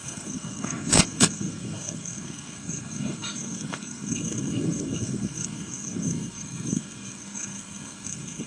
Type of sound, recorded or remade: remade